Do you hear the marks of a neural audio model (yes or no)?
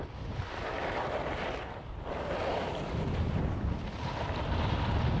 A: yes